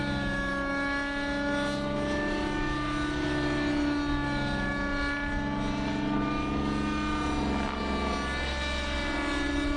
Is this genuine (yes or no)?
yes